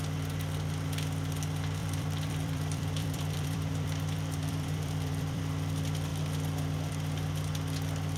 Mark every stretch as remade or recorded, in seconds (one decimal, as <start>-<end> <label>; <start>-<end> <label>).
0.0-1.8 recorded; 1.8-5.4 remade; 5.4-8.2 recorded